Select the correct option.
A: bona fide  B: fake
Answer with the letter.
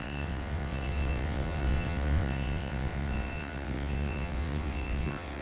B